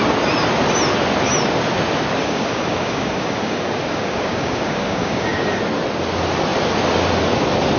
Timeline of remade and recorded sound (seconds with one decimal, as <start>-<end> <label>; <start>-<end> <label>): 0.0-2.2 recorded; 2.2-5.6 remade; 5.6-7.8 recorded